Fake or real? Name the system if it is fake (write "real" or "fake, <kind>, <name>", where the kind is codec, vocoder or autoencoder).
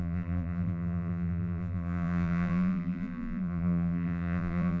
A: fake, vocoder, BigVGAN v2